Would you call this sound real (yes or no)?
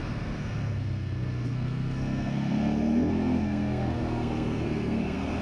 no